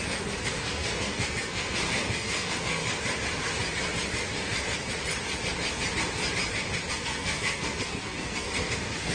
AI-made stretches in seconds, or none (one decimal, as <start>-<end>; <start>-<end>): 0.0-2.8; 6.9-9.1